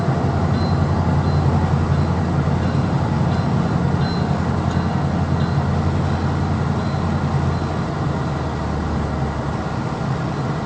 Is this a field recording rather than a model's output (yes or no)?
yes